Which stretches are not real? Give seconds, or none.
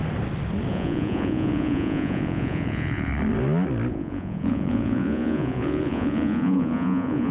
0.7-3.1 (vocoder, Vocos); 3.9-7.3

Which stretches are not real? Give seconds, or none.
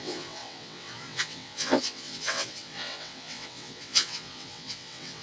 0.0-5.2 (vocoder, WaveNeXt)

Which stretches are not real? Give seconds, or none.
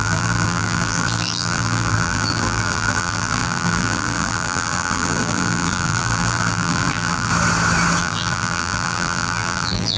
0.0-7.3 (vocoder, BigVGAN v2); 8.0-10.0